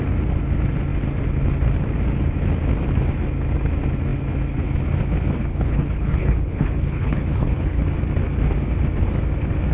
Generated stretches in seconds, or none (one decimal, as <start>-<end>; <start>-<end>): 5.5-7.8